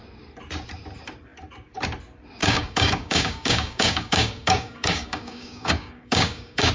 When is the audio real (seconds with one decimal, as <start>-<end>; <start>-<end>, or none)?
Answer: 0.0-2.4